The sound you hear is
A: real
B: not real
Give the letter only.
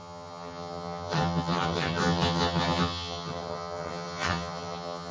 B